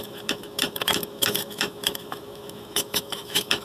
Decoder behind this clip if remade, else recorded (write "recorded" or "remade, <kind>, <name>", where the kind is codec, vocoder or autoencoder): remade, autoencoder, DAC-VAE